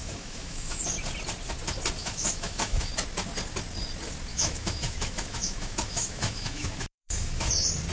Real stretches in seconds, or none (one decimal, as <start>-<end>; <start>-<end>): 0.8-2.0; 2.9-4.3; 7.5-7.9

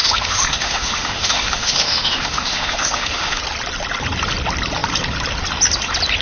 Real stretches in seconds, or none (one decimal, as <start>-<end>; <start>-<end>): 3.4-6.2

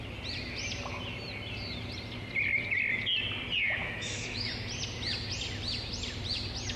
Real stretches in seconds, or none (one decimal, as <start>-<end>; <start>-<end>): 0.0-3.8; 4.5-6.8

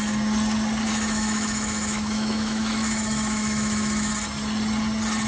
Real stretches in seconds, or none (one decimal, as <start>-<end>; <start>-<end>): 0.0-0.9; 4.1-5.3

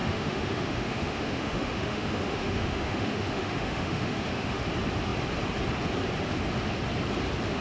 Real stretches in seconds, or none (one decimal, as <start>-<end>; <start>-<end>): 4.6-7.6

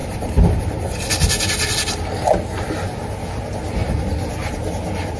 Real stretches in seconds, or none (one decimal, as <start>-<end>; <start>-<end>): 0.0-5.2